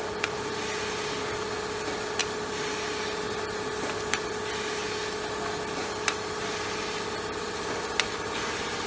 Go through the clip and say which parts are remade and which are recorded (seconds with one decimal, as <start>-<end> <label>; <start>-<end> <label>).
0.0-8.9 recorded